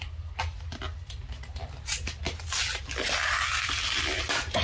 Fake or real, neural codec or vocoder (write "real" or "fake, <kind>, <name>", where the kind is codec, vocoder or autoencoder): real